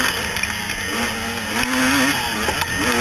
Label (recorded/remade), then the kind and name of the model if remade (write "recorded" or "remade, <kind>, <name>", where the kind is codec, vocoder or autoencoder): recorded